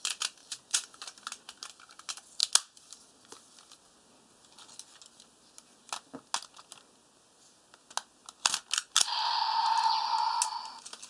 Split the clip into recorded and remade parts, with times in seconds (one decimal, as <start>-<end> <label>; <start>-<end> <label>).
0.0-0.4 recorded; 0.4-1.0 remade; 1.0-11.1 recorded

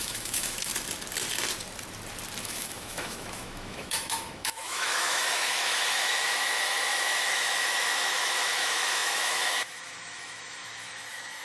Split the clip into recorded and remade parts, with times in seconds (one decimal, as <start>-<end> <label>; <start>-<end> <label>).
0.0-0.7 remade; 0.7-2.4 recorded; 2.4-11.4 remade

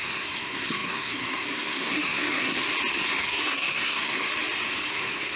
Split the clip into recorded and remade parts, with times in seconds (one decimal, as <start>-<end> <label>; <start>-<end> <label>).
0.0-2.6 remade; 2.6-3.2 recorded; 3.2-4.3 remade; 4.3-4.9 recorded; 4.9-5.4 remade

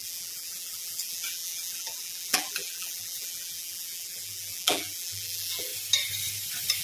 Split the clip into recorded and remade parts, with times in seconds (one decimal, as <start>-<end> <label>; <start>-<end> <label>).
0.0-5.7 remade; 5.7-6.8 recorded